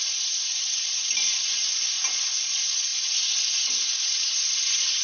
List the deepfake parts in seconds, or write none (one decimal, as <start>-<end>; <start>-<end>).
none